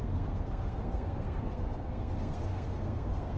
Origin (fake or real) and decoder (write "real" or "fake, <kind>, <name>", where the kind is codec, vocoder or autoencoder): fake, codec, SNAC